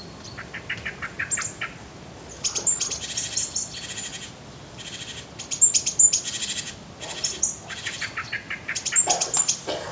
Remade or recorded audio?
recorded